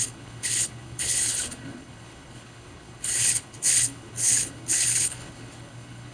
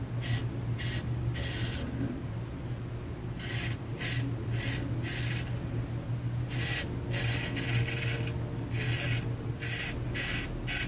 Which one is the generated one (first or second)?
first